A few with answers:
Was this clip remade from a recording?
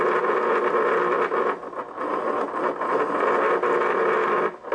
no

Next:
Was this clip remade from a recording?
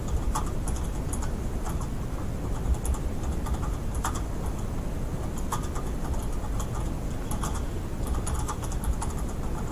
no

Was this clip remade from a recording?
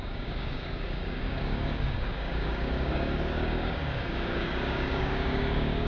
yes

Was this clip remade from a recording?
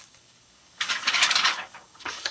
yes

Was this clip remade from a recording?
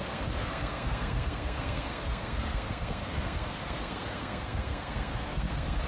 yes